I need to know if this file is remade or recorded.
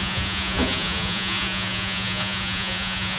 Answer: remade